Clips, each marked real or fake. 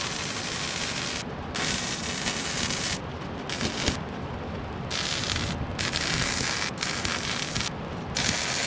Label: real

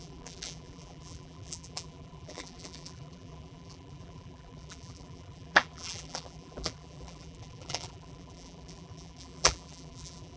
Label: fake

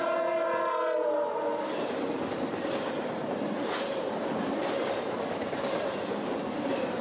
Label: fake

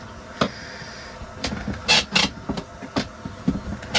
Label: real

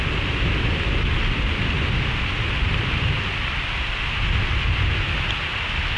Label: real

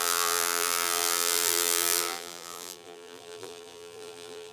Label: fake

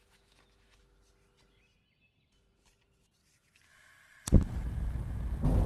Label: real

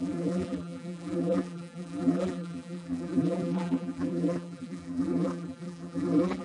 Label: fake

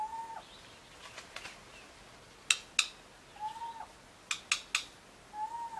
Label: real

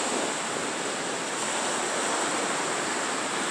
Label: real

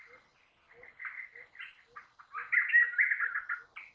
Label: real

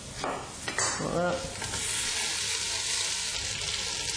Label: real